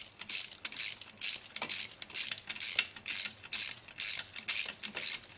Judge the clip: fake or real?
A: real